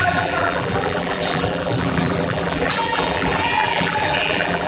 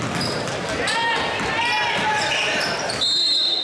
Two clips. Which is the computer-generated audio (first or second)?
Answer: first